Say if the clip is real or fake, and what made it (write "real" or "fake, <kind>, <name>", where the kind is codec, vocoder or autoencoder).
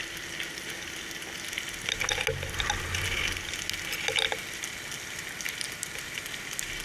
real